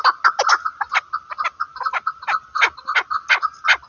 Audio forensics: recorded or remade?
recorded